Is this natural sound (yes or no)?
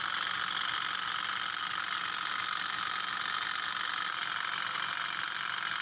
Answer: yes